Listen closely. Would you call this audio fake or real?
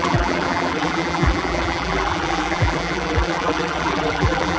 fake